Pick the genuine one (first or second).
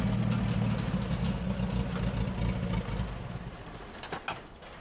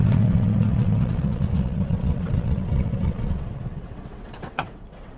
first